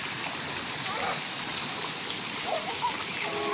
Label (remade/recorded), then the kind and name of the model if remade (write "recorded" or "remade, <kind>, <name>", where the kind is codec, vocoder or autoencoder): recorded